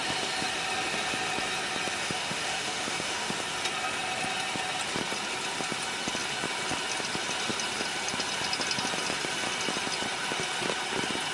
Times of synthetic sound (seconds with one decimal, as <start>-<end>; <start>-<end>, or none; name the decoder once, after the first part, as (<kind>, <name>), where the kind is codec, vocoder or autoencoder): 2.0-3.3 (autoencoder, DAC-VAE)